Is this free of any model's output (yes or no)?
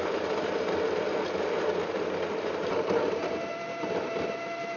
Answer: yes